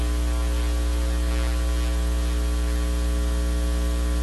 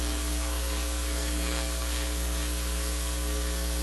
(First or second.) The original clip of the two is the first